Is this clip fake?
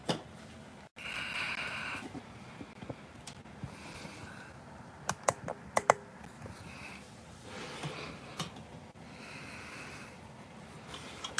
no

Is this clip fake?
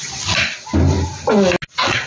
no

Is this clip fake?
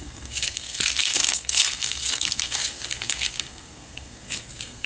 yes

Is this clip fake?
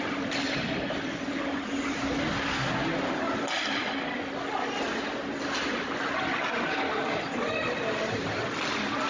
no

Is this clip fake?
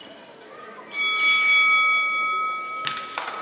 no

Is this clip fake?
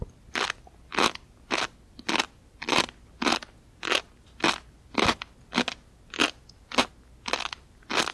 no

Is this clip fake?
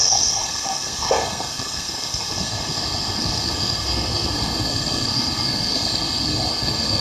yes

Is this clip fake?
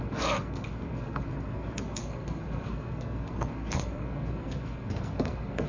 yes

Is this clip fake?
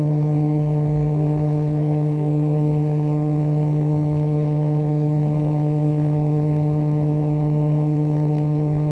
yes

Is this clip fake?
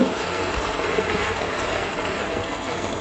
yes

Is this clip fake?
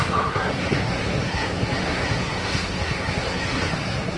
yes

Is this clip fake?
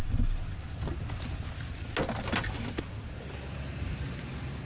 no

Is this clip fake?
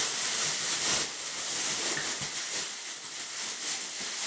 no